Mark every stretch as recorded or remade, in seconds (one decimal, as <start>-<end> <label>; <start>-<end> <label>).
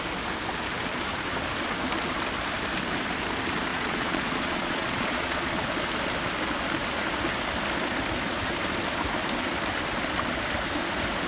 0.0-3.7 recorded; 3.7-5.6 remade; 5.6-11.3 recorded